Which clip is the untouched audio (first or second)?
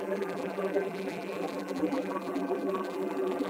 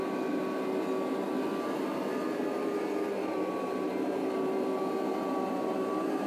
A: second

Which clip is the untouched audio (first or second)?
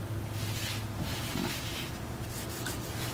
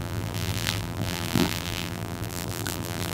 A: first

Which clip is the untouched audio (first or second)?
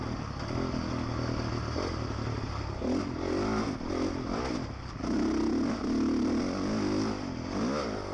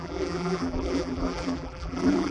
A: first